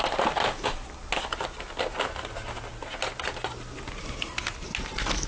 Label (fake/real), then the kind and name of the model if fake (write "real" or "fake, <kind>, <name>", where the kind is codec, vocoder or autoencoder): real